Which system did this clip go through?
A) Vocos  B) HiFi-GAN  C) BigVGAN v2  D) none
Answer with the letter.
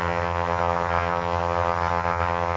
B